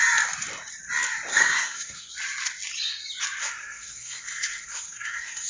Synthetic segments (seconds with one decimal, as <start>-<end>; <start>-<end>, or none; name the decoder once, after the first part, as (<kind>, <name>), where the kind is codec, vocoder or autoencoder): 1.3-2.1 (codec, SNAC); 3.4-5.5